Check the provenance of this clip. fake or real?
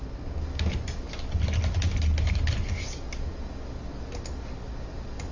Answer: real